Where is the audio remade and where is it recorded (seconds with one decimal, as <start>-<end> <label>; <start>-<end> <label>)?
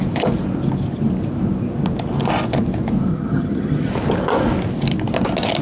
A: 0.0-3.1 recorded; 3.1-3.9 remade; 3.9-5.6 recorded